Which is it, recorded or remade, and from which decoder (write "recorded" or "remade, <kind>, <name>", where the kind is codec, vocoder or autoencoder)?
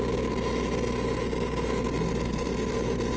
recorded